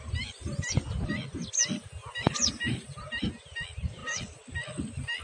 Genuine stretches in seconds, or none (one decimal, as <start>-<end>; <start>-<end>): 0.0-2.0; 3.3-5.2